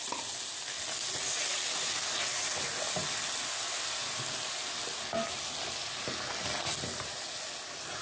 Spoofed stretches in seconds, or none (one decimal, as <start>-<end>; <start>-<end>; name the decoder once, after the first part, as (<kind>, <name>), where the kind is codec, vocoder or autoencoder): none